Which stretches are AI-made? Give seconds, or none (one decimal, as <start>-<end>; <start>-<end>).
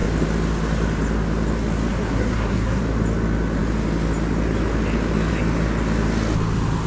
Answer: 1.9-2.8